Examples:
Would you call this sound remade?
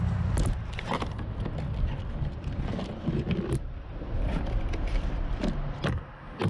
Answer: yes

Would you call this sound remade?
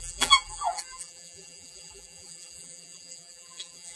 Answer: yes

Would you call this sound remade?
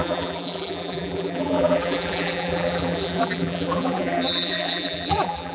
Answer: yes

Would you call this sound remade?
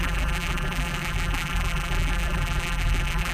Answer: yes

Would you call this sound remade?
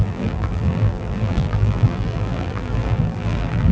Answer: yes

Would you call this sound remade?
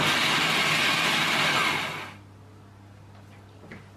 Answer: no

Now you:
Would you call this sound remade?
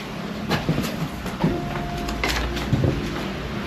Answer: no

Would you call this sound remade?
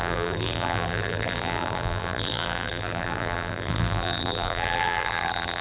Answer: yes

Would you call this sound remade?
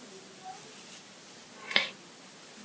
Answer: no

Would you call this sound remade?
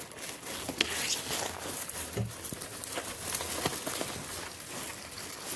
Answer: no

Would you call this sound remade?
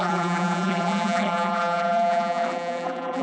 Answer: yes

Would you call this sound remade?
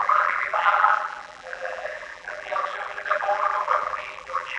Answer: yes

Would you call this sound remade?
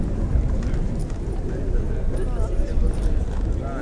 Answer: no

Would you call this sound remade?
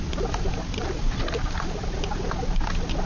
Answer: no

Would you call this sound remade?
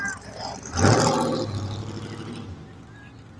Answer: no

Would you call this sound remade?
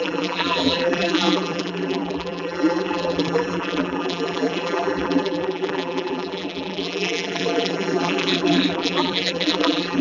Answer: yes